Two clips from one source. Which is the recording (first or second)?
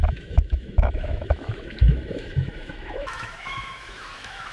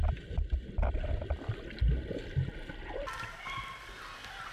second